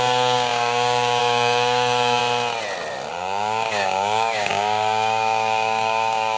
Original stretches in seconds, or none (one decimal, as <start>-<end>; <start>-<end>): 2.2-3.1